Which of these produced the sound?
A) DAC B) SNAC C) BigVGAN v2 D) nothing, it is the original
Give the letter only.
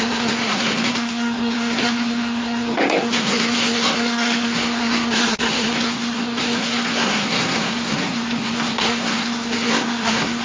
B